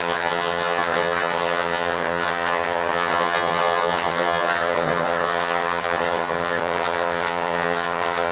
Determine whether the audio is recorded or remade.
remade